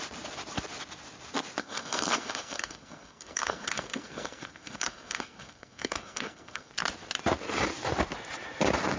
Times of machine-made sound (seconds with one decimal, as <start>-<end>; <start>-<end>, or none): 1.6-6.7